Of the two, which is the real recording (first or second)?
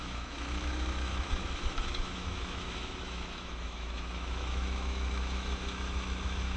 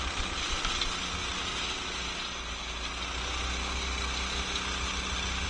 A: second